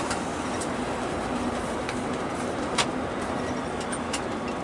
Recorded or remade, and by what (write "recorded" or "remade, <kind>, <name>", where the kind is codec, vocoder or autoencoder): recorded